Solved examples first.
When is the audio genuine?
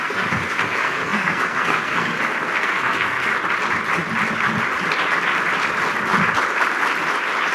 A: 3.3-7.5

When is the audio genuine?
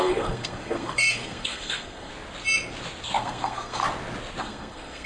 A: 2.1-3.2; 3.8-4.4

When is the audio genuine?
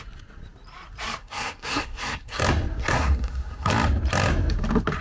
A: 0.0-1.2; 2.4-2.8; 3.7-5.0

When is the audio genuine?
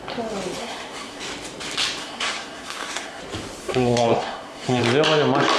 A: 0.0-0.6; 1.2-2.0; 3.2-3.6; 4.8-5.6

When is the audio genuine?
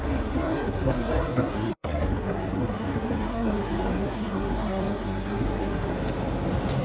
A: 5.9-6.8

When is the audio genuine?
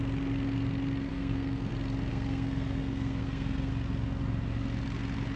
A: 0.0-1.1; 1.7-2.1; 3.7-5.4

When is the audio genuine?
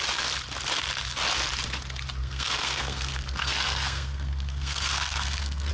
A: 0.0-2.2